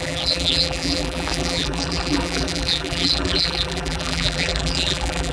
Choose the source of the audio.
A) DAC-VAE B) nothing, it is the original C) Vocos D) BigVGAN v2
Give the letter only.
D